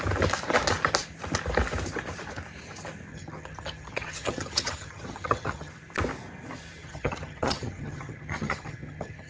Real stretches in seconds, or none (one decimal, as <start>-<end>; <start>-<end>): 0.0-3.1; 5.7-6.8